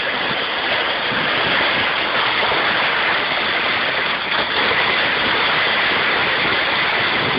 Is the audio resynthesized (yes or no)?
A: no